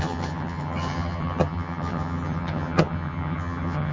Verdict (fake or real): fake